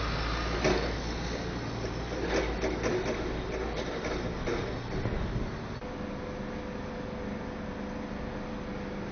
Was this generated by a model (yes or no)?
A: no